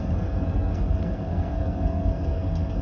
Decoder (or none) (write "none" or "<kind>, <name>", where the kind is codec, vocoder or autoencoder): codec, SNAC